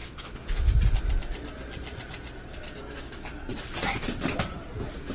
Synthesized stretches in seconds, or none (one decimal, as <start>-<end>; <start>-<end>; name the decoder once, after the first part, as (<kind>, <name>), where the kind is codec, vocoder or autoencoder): 0.0-0.7 (vocoder, Vocos)